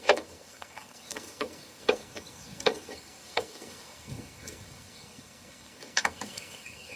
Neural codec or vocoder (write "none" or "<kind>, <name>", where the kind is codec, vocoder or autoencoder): codec, SNAC